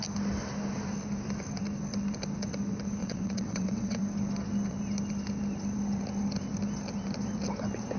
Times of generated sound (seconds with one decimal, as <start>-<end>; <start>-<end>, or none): 3.0-4.0